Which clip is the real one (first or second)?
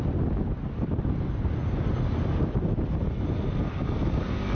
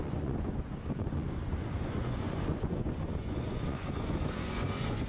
first